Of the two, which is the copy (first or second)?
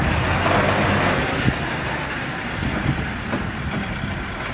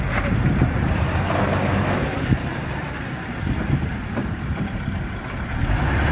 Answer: second